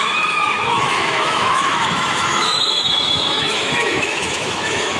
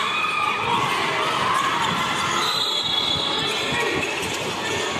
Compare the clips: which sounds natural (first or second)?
second